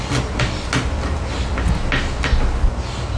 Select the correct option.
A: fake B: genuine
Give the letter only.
B